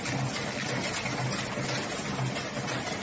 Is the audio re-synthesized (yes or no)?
no